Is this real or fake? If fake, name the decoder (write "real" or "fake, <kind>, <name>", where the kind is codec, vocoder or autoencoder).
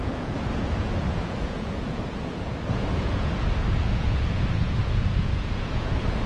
fake, vocoder, Vocos